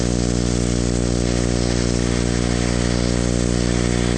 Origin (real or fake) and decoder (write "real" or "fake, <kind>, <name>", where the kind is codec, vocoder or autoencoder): real